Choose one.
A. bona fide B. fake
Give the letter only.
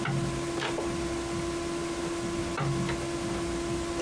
A